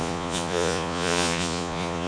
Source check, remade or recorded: remade